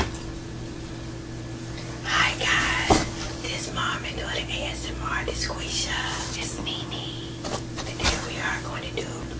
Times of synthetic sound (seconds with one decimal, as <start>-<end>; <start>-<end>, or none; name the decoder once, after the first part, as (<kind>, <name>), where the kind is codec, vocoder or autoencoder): none